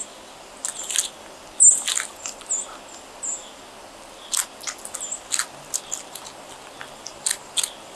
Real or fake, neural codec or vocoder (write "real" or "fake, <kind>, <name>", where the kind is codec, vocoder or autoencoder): real